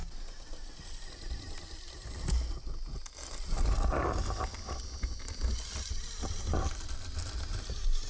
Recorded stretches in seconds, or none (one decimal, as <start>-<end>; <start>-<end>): 0.0-8.1